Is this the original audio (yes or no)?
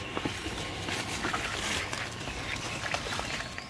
yes